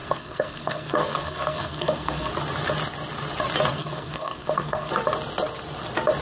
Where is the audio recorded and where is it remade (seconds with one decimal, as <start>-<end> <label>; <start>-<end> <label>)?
0.0-2.3 remade; 2.3-3.7 recorded; 3.7-4.9 remade; 4.9-6.2 recorded